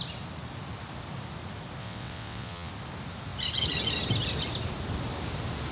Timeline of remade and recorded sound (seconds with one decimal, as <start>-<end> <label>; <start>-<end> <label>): 0.0-1.8 recorded; 1.8-2.7 remade; 2.7-5.7 recorded